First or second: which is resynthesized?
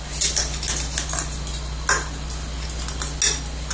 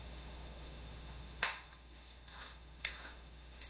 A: second